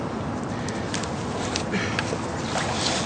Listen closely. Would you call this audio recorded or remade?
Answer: recorded